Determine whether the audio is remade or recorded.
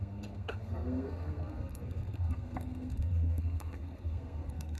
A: remade